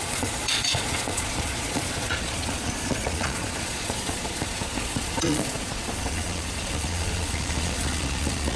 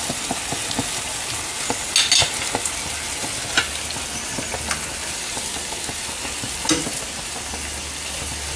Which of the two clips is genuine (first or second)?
second